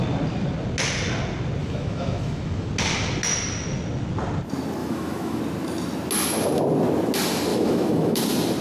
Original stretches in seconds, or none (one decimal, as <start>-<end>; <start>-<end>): 0.0-1.6; 2.7-4.8; 5.4-7.5; 8.2-8.6